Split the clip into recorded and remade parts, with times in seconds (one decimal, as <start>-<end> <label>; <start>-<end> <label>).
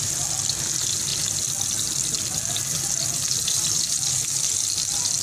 0.0-5.2 recorded